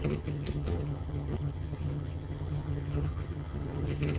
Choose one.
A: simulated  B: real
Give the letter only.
A